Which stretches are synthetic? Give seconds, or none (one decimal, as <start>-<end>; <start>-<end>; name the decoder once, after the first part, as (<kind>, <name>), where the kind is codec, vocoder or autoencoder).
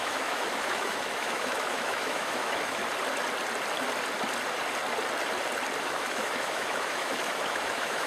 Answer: 0.0-2.8 (autoencoder, DAC-VAE); 5.8-8.1